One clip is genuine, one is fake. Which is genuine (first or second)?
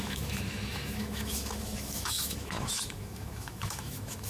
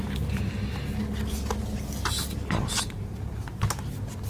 second